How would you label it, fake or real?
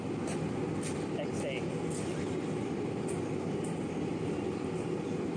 real